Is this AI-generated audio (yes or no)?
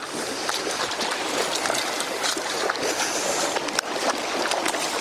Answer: no